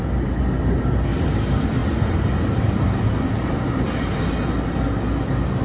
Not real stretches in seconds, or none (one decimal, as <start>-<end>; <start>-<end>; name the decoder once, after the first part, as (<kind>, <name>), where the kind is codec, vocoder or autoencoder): none